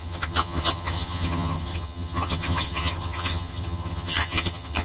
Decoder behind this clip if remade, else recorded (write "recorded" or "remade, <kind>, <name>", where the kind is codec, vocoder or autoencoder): remade, vocoder, HiFi-GAN